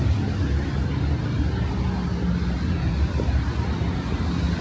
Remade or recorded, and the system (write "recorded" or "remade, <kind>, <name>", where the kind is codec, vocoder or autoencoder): recorded